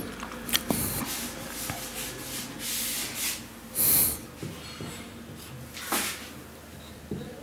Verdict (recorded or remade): recorded